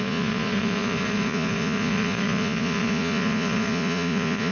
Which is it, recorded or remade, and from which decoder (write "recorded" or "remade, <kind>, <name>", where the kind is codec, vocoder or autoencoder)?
remade, vocoder, Vocos